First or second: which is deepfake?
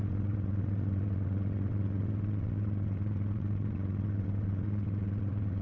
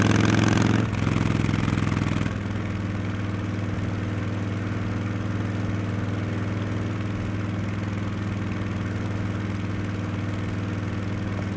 first